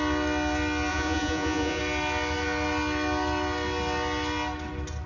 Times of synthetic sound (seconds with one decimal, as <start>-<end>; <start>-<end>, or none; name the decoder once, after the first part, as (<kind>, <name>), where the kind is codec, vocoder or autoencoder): 0.9-1.8 (vocoder, Vocos)